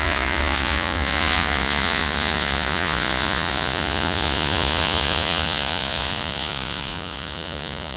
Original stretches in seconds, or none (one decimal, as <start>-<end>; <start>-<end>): none